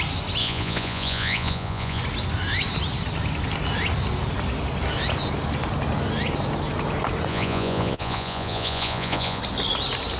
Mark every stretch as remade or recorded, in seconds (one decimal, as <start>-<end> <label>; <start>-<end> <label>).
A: 0.0-0.4 recorded; 0.4-2.0 remade; 2.0-7.3 recorded; 7.3-9.4 remade; 9.4-10.2 recorded